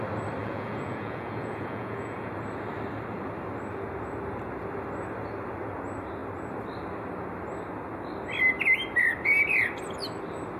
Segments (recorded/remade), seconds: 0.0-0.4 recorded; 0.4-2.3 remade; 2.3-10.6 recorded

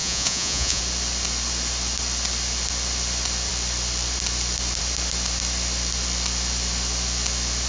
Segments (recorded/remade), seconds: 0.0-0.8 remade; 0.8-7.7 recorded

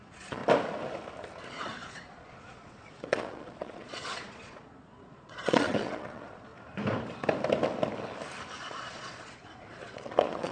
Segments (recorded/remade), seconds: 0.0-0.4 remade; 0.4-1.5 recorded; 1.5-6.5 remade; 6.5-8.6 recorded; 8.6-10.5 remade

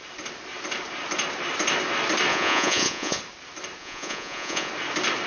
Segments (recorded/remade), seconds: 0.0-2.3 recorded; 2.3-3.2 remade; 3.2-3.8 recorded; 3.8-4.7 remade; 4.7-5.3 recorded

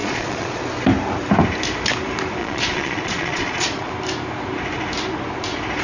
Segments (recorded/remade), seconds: 0.0-0.6 remade; 0.6-2.4 recorded; 2.4-3.9 remade; 3.9-5.8 recorded

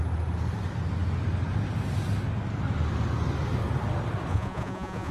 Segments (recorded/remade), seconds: 0.0-4.3 recorded; 4.3-5.1 remade

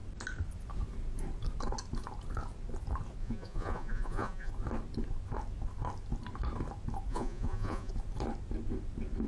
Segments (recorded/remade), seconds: 0.0-3.2 recorded; 3.2-4.5 remade; 4.5-7.1 recorded; 7.1-7.9 remade; 7.9-9.3 recorded